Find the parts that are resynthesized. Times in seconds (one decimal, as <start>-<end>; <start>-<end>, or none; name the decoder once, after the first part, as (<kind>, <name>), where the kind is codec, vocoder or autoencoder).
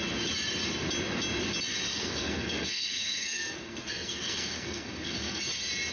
1.9-5.4 (codec, SNAC)